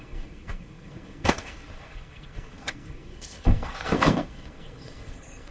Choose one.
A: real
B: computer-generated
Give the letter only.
B